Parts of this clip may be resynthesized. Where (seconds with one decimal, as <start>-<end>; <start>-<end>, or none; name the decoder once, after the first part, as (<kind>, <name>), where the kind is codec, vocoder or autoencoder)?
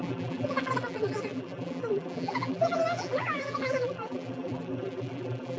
0.0-5.6 (vocoder, BigVGAN v2)